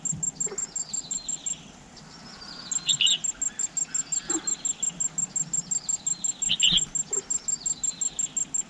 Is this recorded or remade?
recorded